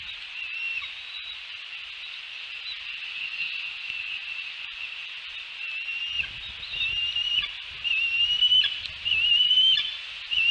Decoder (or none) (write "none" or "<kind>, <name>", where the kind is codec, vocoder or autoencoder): none